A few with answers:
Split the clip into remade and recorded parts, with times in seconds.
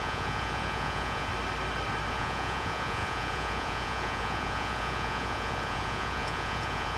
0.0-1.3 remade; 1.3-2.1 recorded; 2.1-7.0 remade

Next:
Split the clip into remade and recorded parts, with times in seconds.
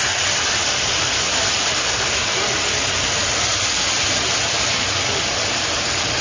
0.0-6.2 recorded